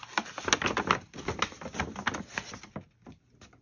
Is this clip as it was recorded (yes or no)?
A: yes